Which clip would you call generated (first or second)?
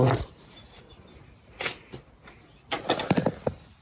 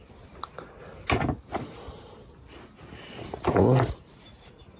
first